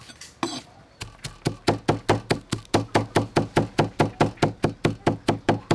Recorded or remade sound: recorded